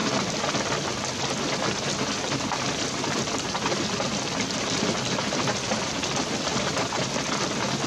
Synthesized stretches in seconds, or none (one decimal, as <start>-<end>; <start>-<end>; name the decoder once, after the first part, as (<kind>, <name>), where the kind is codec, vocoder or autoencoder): 0.0-7.9 (vocoder, BigVGAN v2)